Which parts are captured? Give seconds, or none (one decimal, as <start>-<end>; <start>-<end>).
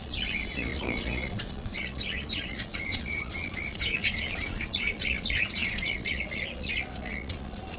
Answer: none